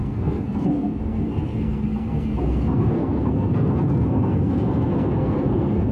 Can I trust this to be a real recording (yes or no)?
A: no